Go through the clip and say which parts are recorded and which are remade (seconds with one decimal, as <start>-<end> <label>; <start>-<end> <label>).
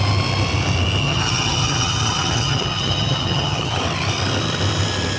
0.0-1.0 recorded; 1.0-3.8 remade; 3.8-5.2 recorded